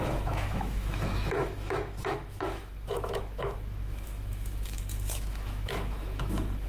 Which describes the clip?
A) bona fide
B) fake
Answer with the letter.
B